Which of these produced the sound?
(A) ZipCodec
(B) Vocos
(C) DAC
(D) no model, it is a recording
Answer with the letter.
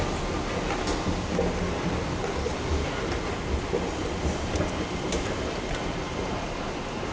D